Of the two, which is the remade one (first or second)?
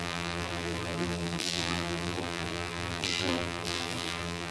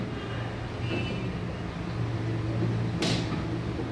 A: first